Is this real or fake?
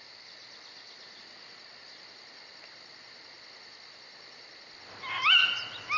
real